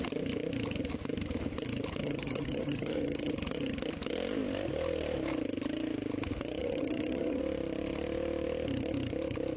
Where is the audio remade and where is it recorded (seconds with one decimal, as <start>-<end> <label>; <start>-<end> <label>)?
0.0-2.0 recorded; 2.0-3.3 remade; 3.3-6.6 recorded; 6.6-7.4 remade; 7.4-9.6 recorded